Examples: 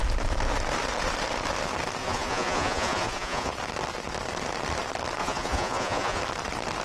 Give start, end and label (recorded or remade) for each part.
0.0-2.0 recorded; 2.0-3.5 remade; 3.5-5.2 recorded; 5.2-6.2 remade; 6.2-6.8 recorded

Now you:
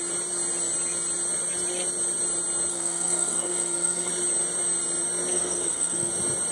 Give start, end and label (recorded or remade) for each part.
0.0-2.7 recorded; 2.7-4.1 remade; 4.1-5.3 recorded; 5.3-6.1 remade; 6.1-6.5 recorded

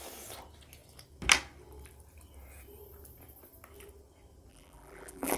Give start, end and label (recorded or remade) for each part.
0.0-4.5 recorded; 4.5-5.4 remade

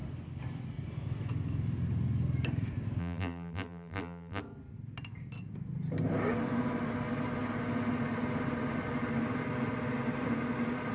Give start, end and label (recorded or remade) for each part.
0.0-3.0 recorded; 3.0-4.4 remade; 4.4-10.9 recorded

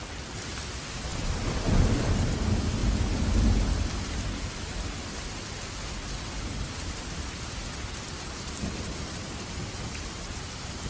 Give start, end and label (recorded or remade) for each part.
0.0-2.8 remade; 2.8-6.4 recorded; 6.4-10.9 remade

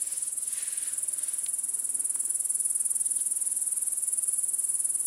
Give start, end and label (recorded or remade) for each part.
0.0-5.1 recorded